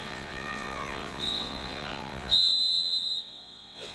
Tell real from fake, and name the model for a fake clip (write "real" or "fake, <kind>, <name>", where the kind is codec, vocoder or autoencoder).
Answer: fake, vocoder, WaveNeXt